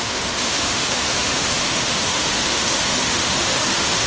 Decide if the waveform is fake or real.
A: fake